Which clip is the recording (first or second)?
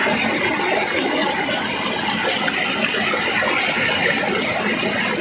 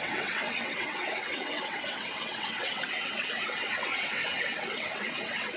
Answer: first